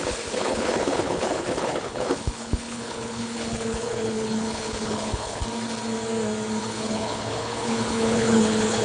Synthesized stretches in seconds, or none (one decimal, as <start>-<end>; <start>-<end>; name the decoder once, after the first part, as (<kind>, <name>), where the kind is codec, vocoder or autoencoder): 0.0-5.4 (codec, HILCodec); 6.6-8.8